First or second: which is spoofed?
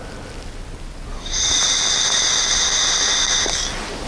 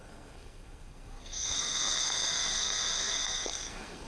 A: second